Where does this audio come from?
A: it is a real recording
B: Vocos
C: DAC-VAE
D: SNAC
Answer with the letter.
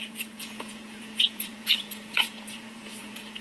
B